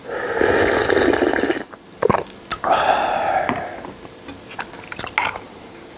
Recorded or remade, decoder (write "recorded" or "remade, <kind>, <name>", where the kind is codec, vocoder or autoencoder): recorded